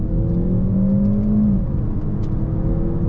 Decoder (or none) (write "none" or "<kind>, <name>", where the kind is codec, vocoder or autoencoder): none